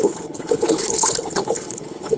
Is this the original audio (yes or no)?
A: no